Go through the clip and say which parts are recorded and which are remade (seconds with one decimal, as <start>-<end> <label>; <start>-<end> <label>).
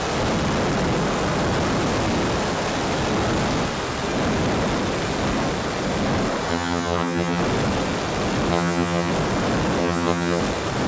0.0-6.5 recorded; 6.5-7.4 remade; 7.4-8.5 recorded; 8.5-9.1 remade; 9.1-9.8 recorded; 9.8-10.4 remade; 10.4-10.9 recorded